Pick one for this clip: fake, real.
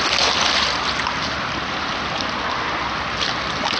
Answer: real